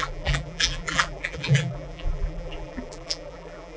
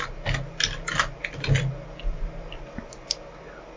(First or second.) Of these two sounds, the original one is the second